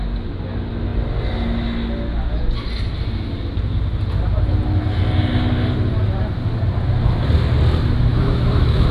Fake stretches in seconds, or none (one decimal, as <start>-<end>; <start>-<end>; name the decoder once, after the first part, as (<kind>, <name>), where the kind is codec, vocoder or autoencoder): 8.1-8.9 (autoencoder, DAC-VAE)